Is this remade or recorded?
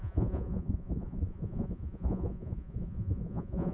remade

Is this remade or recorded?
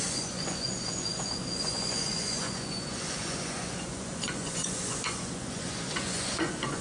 remade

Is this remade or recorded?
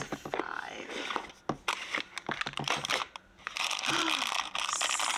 recorded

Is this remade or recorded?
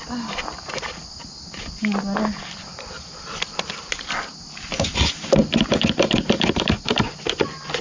recorded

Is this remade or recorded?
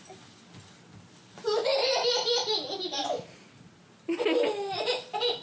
recorded